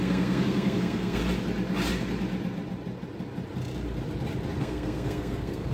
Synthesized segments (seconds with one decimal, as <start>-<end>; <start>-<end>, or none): 0.0-1.2; 4.6-5.7

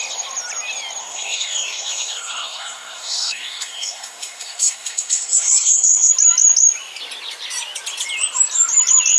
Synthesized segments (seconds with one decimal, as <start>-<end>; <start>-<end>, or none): 1.0-6.1

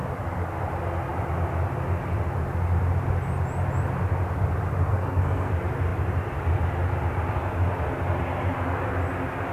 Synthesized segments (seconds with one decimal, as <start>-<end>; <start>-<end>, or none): 4.9-5.5

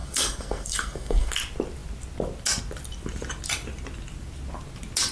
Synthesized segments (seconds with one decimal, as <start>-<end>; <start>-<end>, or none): 0.0-1.3

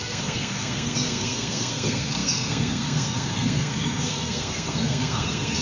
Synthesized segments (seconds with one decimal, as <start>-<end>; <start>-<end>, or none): 0.0-5.6